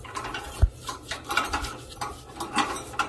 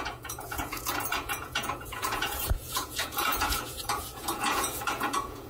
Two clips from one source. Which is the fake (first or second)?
second